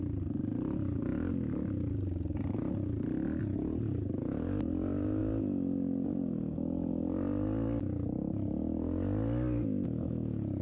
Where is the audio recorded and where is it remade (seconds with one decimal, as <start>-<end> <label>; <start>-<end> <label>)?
0.0-10.6 recorded